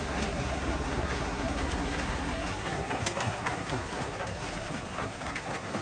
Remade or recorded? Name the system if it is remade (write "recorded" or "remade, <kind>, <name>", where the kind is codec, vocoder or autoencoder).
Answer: remade, codec, SNAC